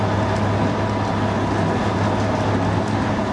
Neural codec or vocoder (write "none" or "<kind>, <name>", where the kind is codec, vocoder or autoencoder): none